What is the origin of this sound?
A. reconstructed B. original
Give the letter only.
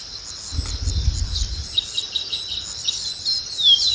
B